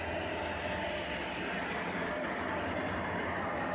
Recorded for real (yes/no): yes